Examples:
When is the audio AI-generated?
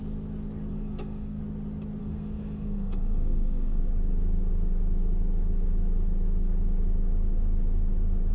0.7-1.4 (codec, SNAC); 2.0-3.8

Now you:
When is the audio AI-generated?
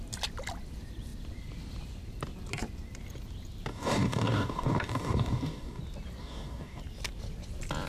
3.7-5.8 (codec, DAC); 6.2-6.8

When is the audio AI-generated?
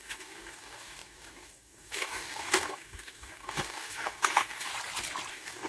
0.0-4.7 (codec, DAC); 5.3-5.7